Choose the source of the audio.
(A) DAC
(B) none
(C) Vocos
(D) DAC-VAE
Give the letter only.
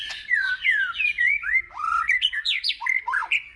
C